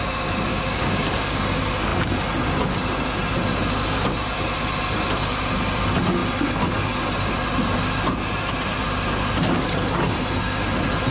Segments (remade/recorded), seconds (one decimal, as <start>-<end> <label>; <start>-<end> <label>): 0.0-0.5 recorded; 0.5-1.4 remade; 1.4-11.1 recorded